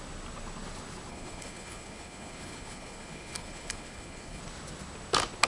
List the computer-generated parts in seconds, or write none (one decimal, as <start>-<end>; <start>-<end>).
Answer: 1.1-4.4